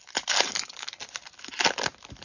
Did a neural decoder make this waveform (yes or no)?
no